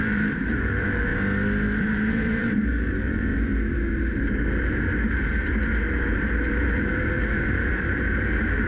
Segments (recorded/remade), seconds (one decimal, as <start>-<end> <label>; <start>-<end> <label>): 0.0-1.1 remade; 1.1-1.8 recorded; 1.8-3.3 remade; 3.3-6.0 recorded; 6.0-8.7 remade

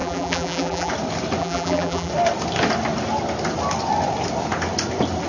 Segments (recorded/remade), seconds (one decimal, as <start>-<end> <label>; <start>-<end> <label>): 0.0-0.9 remade; 0.9-1.4 recorded; 1.4-2.1 remade; 2.1-5.3 recorded